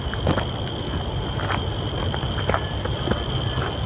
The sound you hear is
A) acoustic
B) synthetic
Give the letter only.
A